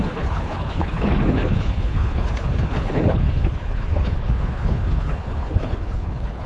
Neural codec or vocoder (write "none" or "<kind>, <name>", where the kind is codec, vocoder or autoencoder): codec, HILCodec